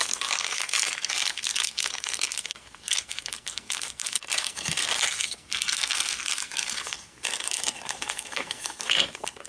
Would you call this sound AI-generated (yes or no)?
yes